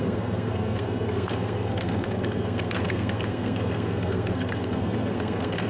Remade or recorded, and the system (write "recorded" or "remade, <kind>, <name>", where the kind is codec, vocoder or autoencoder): remade, codec, SNAC